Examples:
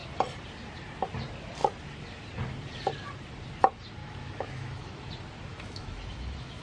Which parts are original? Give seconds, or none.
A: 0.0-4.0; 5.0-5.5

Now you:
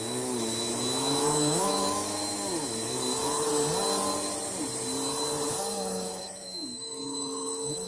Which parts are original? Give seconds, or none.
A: 3.5-5.6

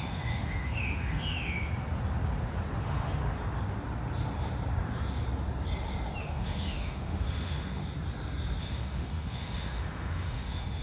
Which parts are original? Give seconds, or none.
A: 1.7-2.8; 3.2-6.2; 7.8-8.6

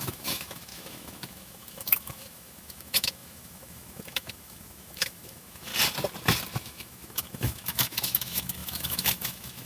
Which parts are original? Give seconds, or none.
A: 5.7-6.6

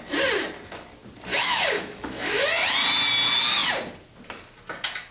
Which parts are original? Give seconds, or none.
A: 0.0-1.3; 2.5-5.1